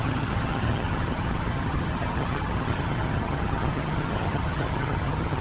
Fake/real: fake